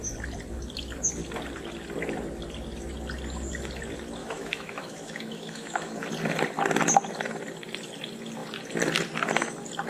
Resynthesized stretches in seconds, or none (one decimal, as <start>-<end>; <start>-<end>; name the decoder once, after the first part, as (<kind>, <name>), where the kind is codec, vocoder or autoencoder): 4.2-6.1 (autoencoder, DAC-VAE)